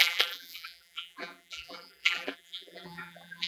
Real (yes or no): no